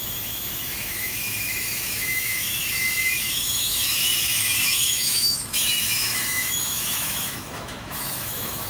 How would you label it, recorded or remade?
remade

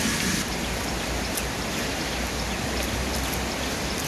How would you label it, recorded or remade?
recorded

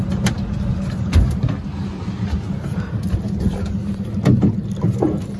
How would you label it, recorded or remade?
recorded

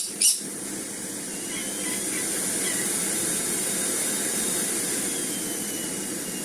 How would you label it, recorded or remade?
recorded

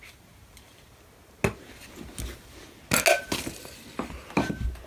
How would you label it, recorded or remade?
recorded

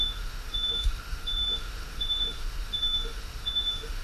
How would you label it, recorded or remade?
remade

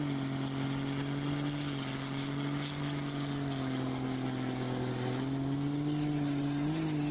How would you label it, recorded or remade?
recorded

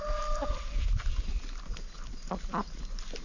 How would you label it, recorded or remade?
recorded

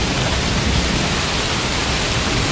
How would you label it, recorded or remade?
recorded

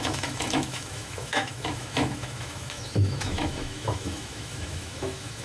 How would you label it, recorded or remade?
remade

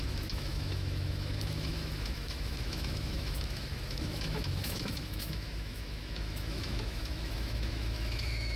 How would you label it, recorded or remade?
remade